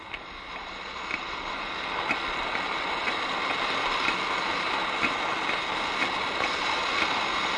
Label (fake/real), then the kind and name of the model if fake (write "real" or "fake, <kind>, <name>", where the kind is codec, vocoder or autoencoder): real